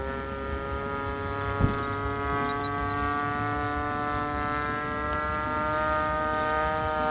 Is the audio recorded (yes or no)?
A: yes